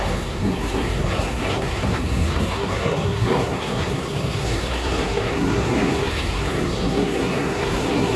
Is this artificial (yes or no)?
yes